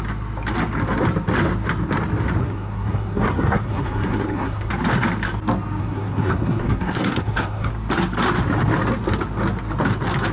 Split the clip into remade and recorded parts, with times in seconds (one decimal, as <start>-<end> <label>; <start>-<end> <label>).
0.0-2.4 recorded; 2.4-4.7 remade; 4.7-5.8 recorded; 5.8-7.7 remade; 7.7-10.3 recorded